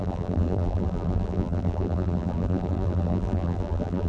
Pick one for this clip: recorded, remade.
remade